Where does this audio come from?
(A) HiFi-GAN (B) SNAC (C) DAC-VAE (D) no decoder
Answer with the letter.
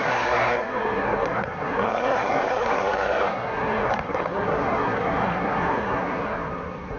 B